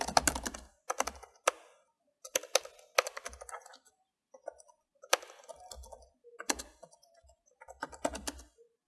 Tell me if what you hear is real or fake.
real